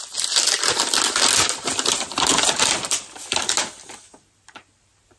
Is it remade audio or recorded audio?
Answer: recorded